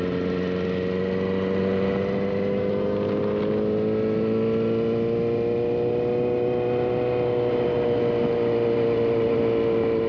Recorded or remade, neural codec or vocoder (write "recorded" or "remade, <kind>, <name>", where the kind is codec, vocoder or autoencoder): recorded